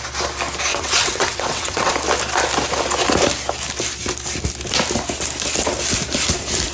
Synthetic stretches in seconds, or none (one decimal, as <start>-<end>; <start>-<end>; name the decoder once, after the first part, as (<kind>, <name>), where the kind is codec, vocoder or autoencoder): 0.7-1.9 (vocoder, WaveNeXt)

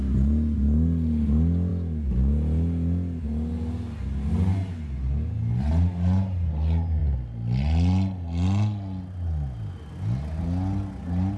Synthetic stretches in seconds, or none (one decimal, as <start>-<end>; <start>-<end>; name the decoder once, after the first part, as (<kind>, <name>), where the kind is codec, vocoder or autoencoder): none

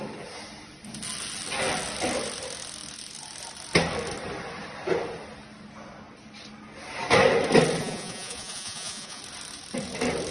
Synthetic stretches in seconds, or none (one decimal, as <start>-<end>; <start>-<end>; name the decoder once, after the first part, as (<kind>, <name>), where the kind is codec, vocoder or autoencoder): 7.8-9.2 (vocoder, Vocos)

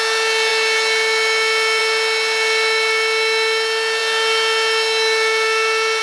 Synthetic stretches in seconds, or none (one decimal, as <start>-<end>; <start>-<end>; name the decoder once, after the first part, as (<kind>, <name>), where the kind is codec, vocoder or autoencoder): none

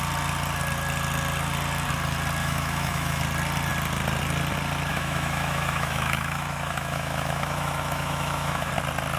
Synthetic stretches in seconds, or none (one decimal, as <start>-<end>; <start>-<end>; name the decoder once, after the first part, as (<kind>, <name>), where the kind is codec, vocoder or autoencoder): 2.4-3.2 (autoencoder, DAC-VAE); 4.9-8.7